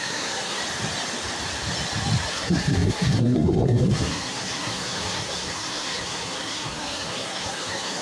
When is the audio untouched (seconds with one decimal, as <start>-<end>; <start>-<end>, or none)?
0.6-2.3

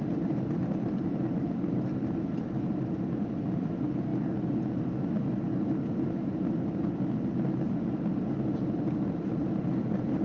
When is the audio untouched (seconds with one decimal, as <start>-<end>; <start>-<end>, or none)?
0.0-10.2